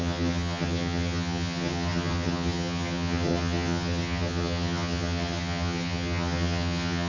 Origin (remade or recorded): remade